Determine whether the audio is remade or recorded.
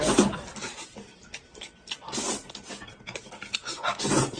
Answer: recorded